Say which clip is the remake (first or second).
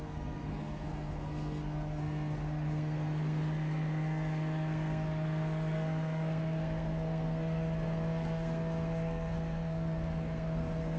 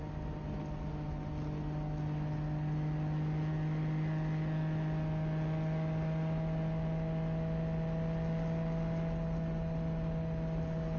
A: first